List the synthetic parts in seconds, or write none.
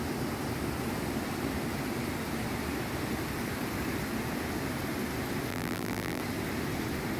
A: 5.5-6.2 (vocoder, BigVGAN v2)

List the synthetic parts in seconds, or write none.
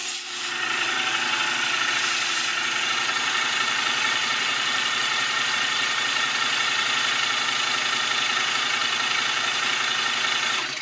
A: 0.0-1.9 (vocoder, BigVGAN v2); 2.5-5.5; 8.8-9.7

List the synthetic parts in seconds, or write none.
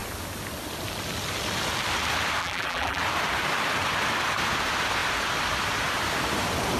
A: 2.4-3.0 (vocoder, BigVGAN v2)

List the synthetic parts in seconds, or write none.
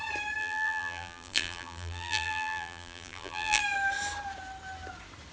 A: 0.4-3.6 (vocoder, BigVGAN v2)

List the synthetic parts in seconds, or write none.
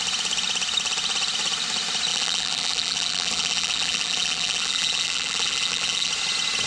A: 2.1-6.1 (vocoder, BigVGAN v2)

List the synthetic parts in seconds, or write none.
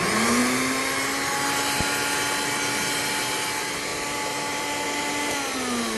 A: 3.9-4.6 (vocoder, BigVGAN v2)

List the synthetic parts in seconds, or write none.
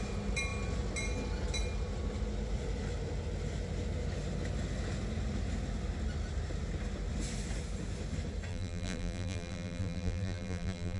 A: 8.5-11.0 (vocoder, BigVGAN v2)